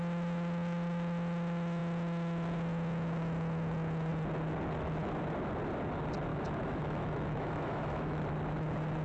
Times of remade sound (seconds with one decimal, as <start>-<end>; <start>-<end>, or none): 6.3-8.2